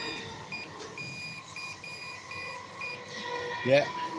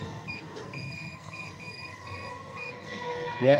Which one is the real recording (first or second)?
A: first